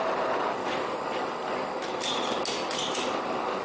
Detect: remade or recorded recorded